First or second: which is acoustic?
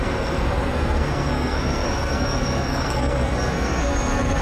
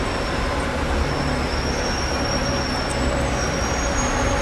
second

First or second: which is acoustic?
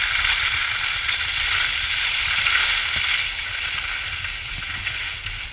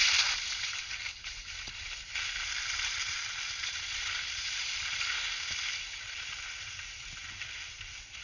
first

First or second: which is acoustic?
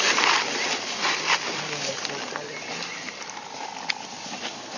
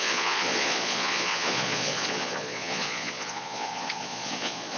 first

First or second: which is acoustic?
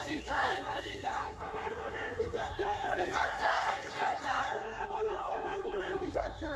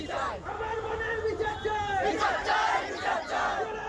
second